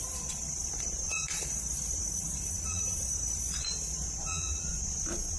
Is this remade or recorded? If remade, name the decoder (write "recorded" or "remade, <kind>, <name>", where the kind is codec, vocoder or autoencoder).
remade, vocoder, Vocos